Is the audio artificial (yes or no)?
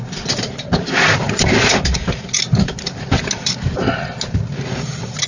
no